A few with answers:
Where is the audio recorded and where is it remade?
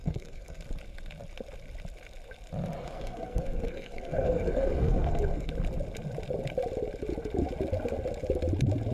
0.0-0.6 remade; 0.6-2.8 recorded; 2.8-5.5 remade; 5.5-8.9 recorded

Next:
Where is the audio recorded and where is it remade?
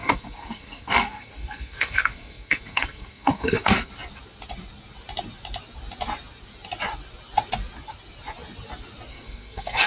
0.0-3.9 remade; 3.9-9.1 recorded; 9.1-9.9 remade